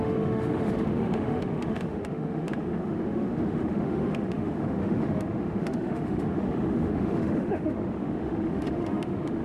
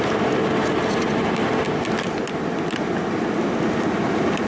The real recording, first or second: second